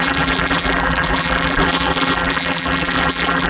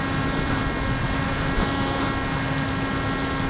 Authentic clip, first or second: second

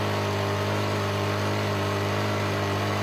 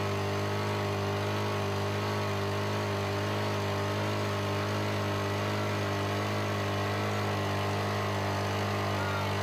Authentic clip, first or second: second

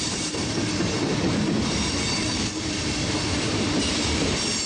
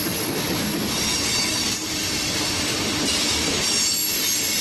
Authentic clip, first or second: second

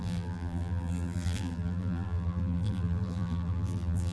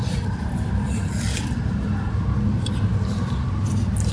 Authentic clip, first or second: second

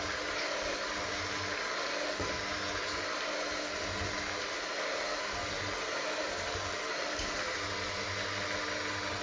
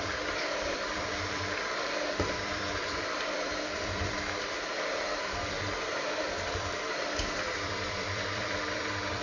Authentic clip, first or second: first